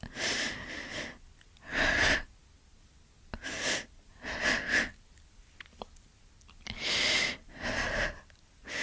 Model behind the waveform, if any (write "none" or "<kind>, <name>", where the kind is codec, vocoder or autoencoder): none